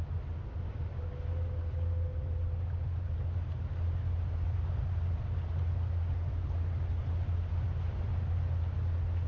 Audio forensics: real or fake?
real